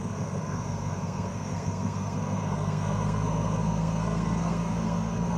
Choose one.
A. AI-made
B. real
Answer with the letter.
A